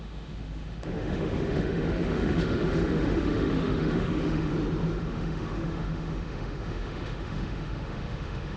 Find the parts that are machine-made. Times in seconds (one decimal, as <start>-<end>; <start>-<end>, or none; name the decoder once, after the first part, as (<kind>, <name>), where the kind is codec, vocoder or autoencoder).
0.0-4.5 (autoencoder, DAC-VAE); 5.0-8.6